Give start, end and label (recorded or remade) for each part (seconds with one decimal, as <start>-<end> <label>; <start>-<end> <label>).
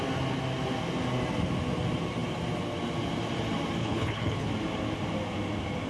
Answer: 0.0-3.8 recorded; 3.8-4.5 remade; 4.5-5.9 recorded